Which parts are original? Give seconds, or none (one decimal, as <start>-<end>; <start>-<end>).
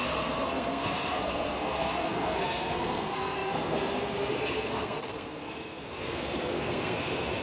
none